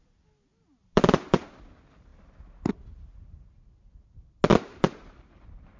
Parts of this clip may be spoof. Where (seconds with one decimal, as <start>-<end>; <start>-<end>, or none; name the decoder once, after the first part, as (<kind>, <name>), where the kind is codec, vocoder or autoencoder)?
0.8-1.5 (vocoder, BigVGAN v2); 4.5-5.8